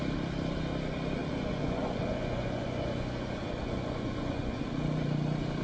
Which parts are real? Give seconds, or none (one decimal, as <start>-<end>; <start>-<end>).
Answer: 0.0-1.2; 4.6-5.6